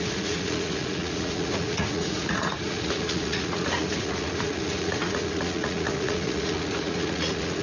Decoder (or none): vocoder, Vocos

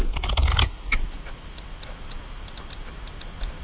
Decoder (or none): vocoder, BigVGAN v2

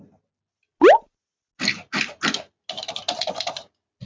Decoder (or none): none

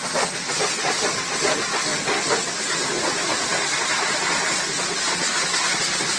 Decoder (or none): none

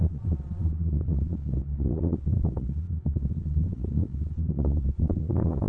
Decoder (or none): vocoder, Vocos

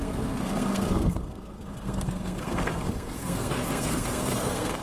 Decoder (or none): codec, SNAC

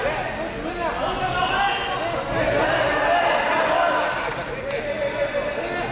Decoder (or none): none